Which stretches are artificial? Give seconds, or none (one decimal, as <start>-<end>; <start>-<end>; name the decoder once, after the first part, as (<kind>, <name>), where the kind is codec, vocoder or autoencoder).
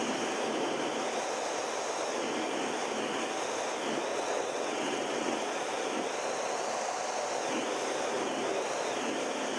4.1-5.4 (vocoder, WaveNeXt)